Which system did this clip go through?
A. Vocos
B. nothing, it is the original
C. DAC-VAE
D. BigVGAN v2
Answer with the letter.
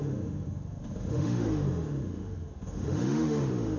C